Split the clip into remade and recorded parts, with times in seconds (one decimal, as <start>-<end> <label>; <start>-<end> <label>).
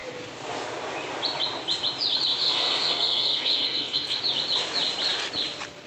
0.0-2.4 recorded; 2.4-4.2 remade; 4.2-5.9 recorded